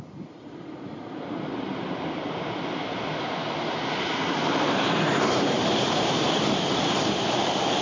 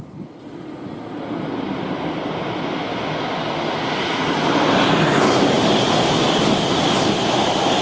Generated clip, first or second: first